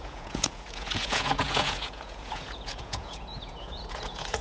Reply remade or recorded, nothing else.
remade